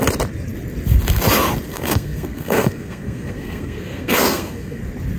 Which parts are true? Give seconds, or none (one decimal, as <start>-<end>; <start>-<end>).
0.0-1.7; 4.8-5.2